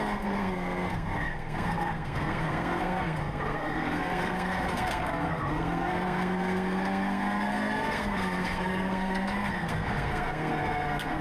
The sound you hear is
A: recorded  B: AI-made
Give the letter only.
B